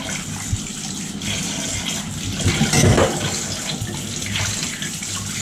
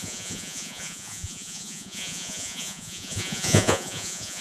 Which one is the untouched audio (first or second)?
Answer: first